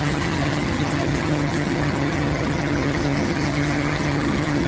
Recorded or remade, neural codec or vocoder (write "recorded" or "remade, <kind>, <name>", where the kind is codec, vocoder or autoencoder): remade, vocoder, HiFi-GAN